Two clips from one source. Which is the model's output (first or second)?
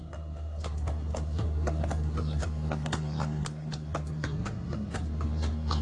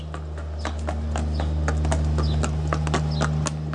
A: first